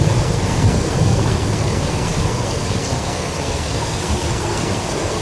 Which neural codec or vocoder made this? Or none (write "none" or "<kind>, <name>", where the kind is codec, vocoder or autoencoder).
codec, SNAC